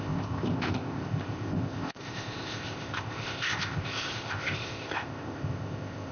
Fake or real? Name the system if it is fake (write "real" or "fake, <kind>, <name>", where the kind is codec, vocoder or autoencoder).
fake, codec, ZipCodec